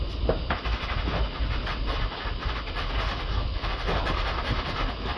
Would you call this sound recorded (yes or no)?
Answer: yes